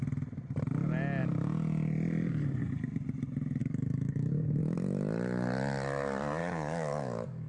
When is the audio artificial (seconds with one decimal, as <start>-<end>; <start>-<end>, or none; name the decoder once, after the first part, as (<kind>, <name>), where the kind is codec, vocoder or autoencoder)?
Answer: 3.6-4.6 (codec, DAC); 6.4-7.5